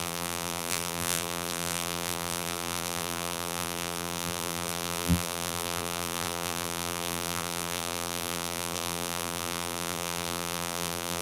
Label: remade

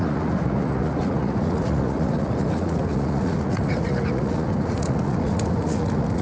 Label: remade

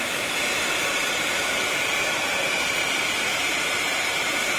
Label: remade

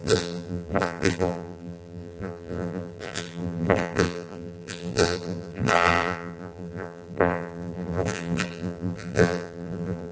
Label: remade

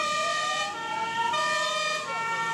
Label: remade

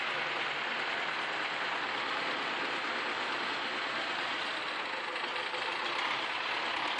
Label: recorded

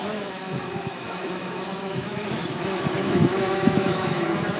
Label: remade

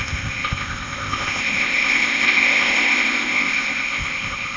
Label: remade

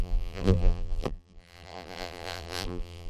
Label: remade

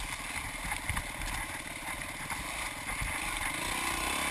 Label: recorded